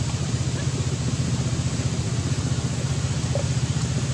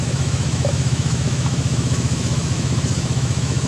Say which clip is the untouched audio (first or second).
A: first